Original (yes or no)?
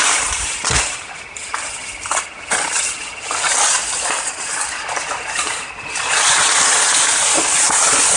yes